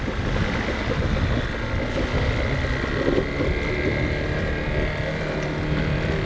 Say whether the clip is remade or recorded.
recorded